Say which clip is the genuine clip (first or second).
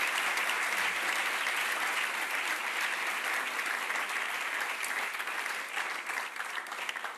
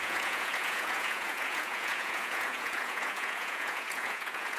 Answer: first